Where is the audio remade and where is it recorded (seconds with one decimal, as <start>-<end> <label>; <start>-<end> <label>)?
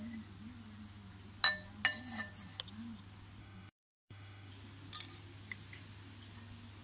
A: 0.0-3.4 recorded; 3.4-4.5 remade; 4.5-6.8 recorded